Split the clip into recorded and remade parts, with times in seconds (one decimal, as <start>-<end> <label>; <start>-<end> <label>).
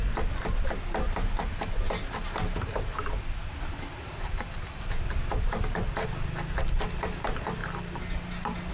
0.0-8.7 recorded